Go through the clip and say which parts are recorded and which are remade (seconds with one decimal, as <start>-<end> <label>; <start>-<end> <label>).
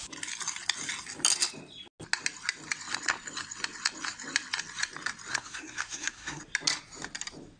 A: 0.0-5.3 recorded; 5.3-6.4 remade; 6.4-7.6 recorded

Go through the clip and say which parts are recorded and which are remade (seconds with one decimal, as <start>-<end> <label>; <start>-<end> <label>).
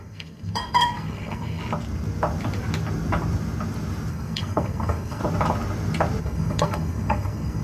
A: 0.0-1.6 remade; 1.6-4.1 recorded; 4.1-5.2 remade; 5.2-6.2 recorded; 6.2-7.6 remade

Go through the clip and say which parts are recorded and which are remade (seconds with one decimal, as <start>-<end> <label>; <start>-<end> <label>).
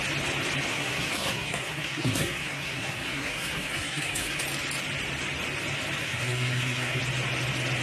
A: 0.0-0.7 recorded; 0.7-4.4 remade; 4.4-6.0 recorded; 6.0-7.0 remade; 7.0-7.8 recorded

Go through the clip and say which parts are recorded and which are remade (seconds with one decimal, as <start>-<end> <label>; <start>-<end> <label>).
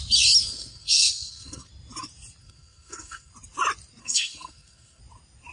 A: 0.0-0.4 recorded; 0.4-1.7 remade; 1.7-2.4 recorded; 2.4-3.3 remade; 3.3-4.0 recorded; 4.0-5.0 remade; 5.0-5.5 recorded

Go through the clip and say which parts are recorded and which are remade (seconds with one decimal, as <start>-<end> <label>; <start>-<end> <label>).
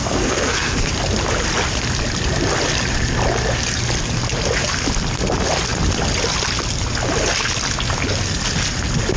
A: 0.0-0.9 remade; 0.9-9.2 recorded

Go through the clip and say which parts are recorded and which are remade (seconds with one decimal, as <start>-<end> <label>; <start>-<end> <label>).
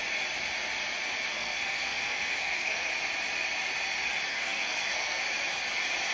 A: 0.0-1.3 recorded; 1.3-2.9 remade; 2.9-4.3 recorded; 4.3-5.2 remade; 5.2-6.1 recorded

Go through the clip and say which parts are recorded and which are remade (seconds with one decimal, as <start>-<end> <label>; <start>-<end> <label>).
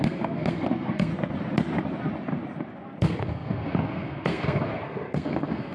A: 0.0-1.1 remade; 1.1-3.0 recorded; 3.0-5.7 remade